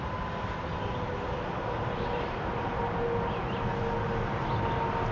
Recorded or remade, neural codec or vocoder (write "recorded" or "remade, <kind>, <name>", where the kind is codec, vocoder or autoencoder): recorded